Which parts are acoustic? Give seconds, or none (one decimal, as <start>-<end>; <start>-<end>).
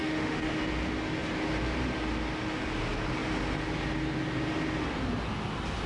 0.5-5.9